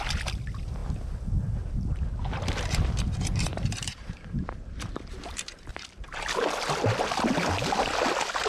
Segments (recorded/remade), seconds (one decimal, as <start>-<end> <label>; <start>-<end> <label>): 0.0-3.5 recorded; 3.5-5.7 remade; 5.7-8.5 recorded